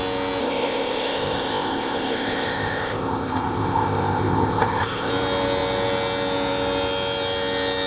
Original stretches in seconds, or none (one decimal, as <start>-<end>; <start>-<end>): 0.0-0.4; 5.1-7.9